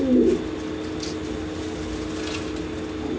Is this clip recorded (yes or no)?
yes